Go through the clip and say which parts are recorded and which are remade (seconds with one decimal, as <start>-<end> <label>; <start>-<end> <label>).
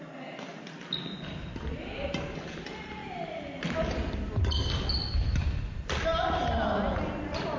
0.0-7.6 recorded